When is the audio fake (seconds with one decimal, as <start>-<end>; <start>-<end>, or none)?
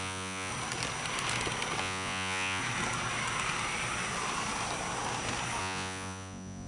0.0-0.5; 1.8-2.6; 5.6-6.7